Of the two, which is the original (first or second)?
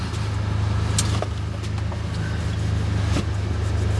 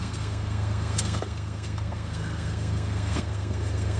first